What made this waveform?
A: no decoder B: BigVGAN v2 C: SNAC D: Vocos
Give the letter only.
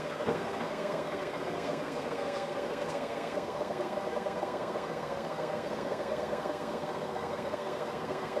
C